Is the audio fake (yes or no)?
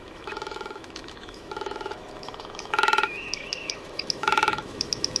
yes